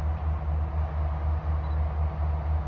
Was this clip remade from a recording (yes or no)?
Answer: no